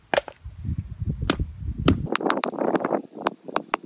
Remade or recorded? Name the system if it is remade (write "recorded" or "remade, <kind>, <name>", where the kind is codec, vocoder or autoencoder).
recorded